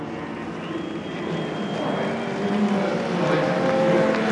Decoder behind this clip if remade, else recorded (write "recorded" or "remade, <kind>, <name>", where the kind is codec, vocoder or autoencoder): recorded